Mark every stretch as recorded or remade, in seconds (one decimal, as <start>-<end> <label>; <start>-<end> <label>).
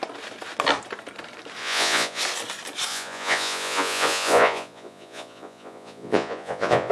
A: 0.0-1.6 recorded; 1.6-2.2 remade; 2.2-2.9 recorded; 2.9-6.9 remade